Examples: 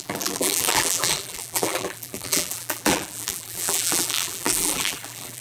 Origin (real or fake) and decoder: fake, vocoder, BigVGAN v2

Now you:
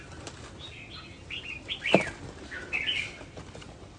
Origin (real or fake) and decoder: real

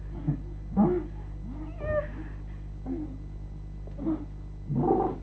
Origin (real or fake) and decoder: real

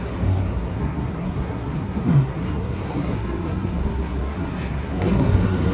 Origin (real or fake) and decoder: fake, codec, SNAC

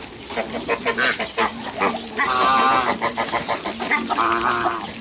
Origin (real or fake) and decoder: real